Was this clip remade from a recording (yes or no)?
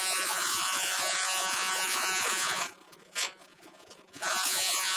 yes